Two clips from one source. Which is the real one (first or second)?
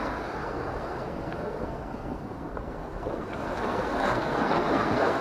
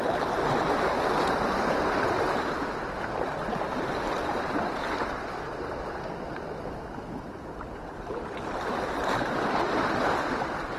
second